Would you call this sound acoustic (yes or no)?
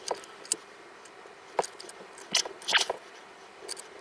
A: yes